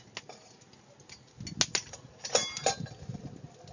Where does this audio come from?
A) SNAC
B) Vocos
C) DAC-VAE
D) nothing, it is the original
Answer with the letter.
D